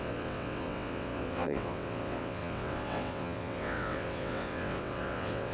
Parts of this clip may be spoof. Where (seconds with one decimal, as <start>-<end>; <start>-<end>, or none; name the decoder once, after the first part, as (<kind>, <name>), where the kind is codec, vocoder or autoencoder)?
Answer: 0.0-5.5 (vocoder, WaveNeXt)